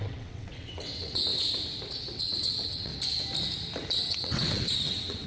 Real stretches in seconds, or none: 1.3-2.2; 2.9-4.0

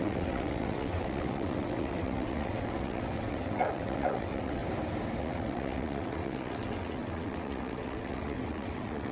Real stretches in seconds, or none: 4.6-5.2

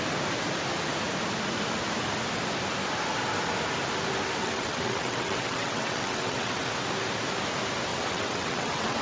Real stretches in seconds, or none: 0.0-4.4; 6.7-7.9

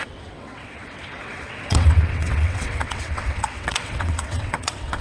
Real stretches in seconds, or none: none

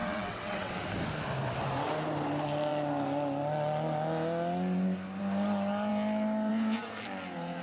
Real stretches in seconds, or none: 0.7-7.6

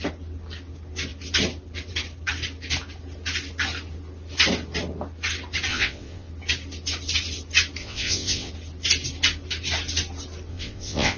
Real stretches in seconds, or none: 0.0-5.7; 6.3-7.8; 8.5-10.5

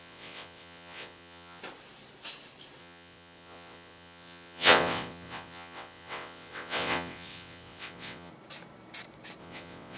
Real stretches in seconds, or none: 1.6-2.8; 8.3-9.4